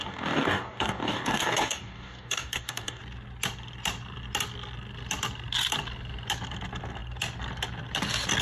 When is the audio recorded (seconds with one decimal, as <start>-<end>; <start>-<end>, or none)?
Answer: 3.0-8.4